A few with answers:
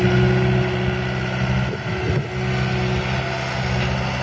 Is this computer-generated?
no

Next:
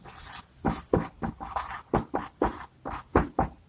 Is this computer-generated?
no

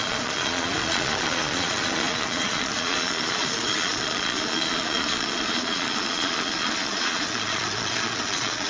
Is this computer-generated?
yes